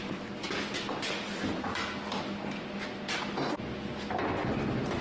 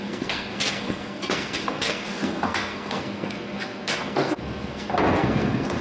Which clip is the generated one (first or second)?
second